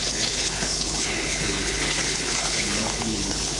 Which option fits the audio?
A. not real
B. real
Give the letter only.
A